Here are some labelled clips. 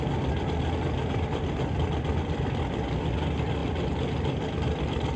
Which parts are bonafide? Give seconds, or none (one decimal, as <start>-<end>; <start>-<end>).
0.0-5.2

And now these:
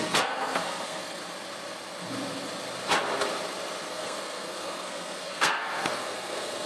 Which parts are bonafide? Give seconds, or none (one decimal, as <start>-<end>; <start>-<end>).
1.2-3.9

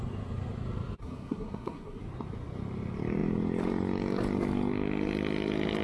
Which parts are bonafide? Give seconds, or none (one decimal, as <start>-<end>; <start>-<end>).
0.0-1.0; 2.0-5.8

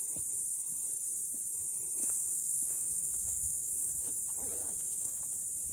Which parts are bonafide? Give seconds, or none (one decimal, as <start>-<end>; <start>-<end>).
0.0-2.0; 3.9-4.6; 5.2-5.7

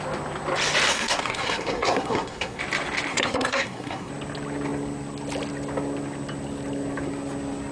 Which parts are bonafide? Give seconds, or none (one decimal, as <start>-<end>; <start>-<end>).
0.0-0.9; 2.6-3.1; 4.1-7.7

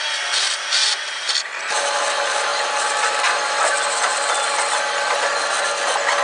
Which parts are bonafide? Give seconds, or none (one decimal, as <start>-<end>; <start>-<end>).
0.0-6.2

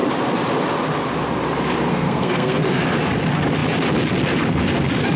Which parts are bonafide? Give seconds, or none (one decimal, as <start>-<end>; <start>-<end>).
0.0-1.9; 2.8-5.2

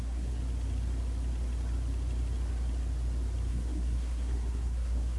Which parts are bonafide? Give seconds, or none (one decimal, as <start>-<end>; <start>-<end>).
0.4-3.5